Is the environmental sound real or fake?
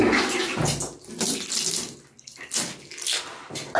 real